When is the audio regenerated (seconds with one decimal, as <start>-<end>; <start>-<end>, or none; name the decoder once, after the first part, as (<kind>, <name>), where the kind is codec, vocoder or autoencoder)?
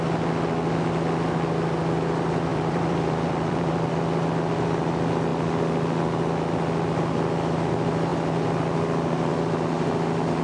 2.5-3.9 (vocoder, BigVGAN v2)